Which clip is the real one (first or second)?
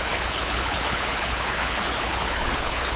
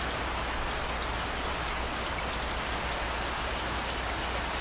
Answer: second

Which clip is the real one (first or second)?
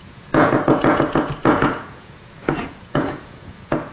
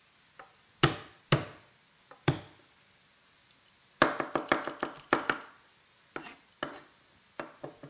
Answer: second